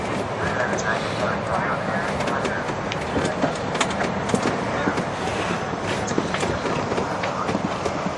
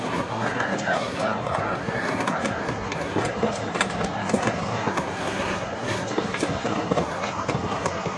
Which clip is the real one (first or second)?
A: first